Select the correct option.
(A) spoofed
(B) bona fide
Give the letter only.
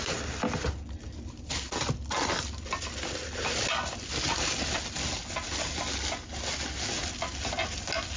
B